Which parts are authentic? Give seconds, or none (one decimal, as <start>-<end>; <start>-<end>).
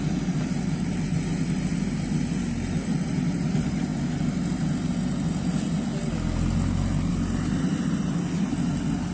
0.0-1.3; 1.9-7.1; 7.7-9.1